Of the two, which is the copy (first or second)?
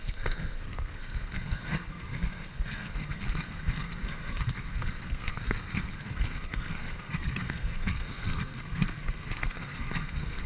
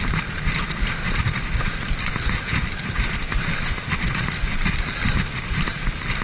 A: first